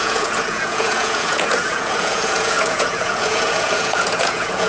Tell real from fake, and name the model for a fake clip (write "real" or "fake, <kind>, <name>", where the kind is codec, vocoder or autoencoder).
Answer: fake, vocoder, Vocos